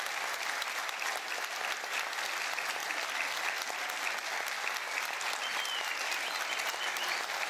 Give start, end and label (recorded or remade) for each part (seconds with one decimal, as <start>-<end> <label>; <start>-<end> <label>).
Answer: 0.0-7.5 recorded